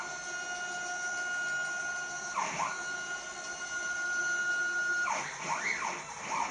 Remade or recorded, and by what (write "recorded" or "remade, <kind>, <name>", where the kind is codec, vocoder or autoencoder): recorded